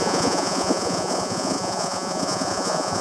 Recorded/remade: remade